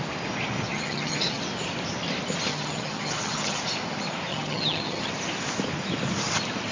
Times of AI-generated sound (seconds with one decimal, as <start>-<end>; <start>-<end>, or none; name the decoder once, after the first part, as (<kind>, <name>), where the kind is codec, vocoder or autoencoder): 0.7-1.4 (vocoder, HiFi-GAN); 2.5-3.6; 4.3-5.1